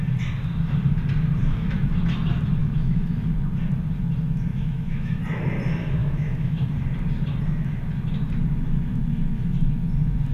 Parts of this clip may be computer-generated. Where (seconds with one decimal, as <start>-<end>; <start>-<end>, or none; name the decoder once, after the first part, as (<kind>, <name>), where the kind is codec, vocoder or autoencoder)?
1.4-1.9 (autoencoder, DAC-VAE); 2.6-3.3; 4.5-5.2; 6.0-6.7